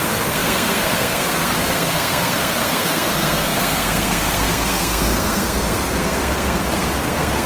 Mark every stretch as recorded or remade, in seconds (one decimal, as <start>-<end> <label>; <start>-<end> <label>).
0.0-7.5 remade